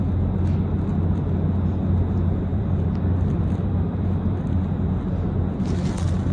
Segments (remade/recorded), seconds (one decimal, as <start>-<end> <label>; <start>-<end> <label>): 0.0-2.5 recorded; 2.5-4.5 remade; 4.5-6.3 recorded